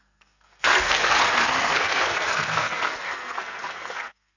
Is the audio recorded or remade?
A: remade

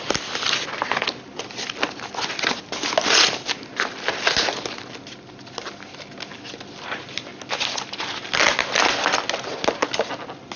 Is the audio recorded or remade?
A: recorded